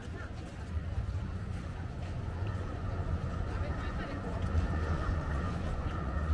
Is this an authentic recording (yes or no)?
no